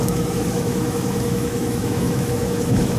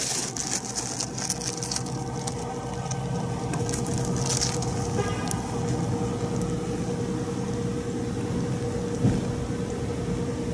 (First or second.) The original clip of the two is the second